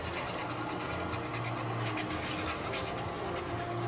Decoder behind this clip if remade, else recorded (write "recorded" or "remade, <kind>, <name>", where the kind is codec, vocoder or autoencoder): recorded